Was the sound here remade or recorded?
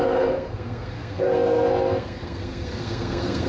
remade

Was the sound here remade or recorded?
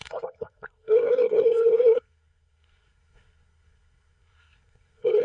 remade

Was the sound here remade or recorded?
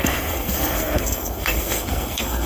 remade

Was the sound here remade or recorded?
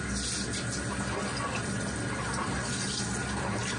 recorded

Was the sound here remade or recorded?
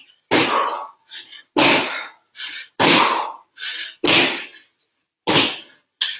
recorded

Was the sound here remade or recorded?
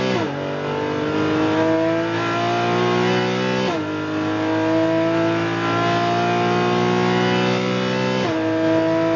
recorded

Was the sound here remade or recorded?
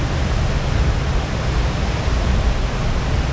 recorded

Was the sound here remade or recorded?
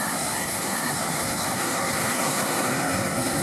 remade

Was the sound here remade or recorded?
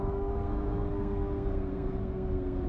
remade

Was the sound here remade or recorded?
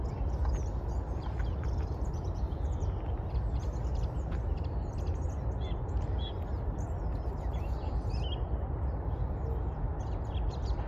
recorded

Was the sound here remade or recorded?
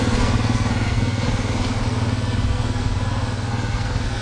remade